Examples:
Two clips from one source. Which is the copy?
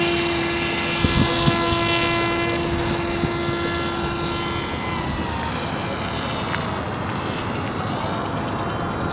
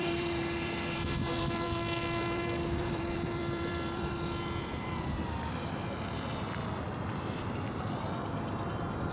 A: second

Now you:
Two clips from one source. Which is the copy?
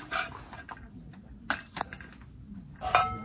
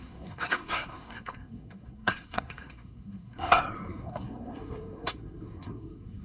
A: second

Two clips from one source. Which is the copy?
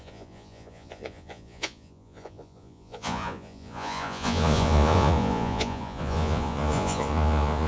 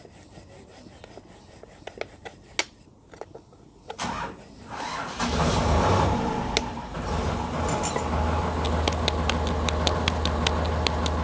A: first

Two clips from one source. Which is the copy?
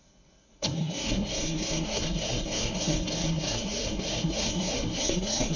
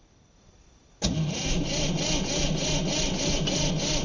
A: first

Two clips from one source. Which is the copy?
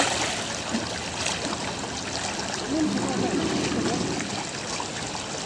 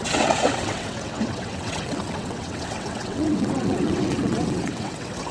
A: second